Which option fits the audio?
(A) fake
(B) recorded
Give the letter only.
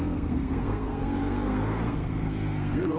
A